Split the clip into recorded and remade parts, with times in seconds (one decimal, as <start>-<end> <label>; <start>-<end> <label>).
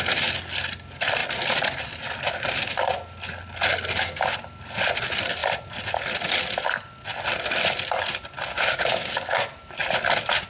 0.0-8.5 recorded; 8.5-9.3 remade; 9.3-10.5 recorded